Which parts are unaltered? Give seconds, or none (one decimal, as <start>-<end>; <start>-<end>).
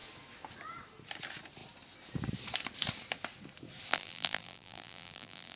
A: 0.0-3.9